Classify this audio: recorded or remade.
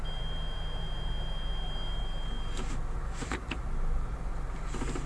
recorded